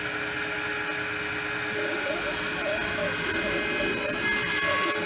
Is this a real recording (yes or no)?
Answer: yes